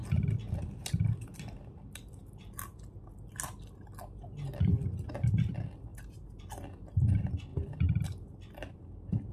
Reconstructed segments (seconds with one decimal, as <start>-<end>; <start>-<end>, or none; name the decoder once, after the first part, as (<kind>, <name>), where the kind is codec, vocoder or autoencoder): 5.9-6.4 (vocoder, BigVGAN v2)